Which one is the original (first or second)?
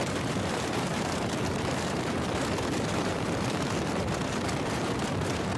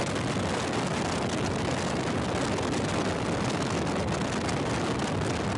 second